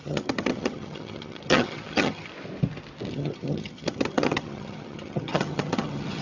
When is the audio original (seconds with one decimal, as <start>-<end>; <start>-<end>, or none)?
2.3-3.1